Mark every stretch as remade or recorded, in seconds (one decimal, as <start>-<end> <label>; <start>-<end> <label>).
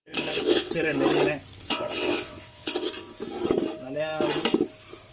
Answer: 0.0-0.7 remade; 0.7-1.6 recorded; 1.6-2.9 remade; 2.9-5.1 recorded